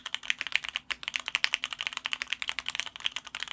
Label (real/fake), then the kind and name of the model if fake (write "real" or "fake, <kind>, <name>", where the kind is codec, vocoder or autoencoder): real